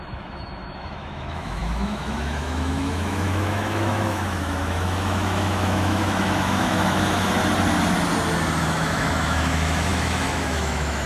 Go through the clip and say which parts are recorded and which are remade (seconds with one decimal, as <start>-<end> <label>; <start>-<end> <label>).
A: 0.0-7.4 remade; 7.4-8.6 recorded; 8.6-11.1 remade